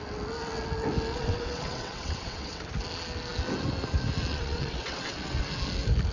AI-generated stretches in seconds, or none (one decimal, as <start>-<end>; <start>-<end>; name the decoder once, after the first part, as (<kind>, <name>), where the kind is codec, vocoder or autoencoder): 1.1-2.6 (vocoder, WaveNeXt); 4.3-5.4